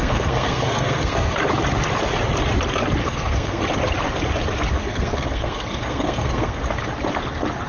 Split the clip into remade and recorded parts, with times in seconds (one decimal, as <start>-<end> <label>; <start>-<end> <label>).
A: 0.0-1.4 remade; 1.4-3.0 recorded; 3.0-3.6 remade; 3.6-4.7 recorded; 4.7-6.6 remade; 6.6-7.7 recorded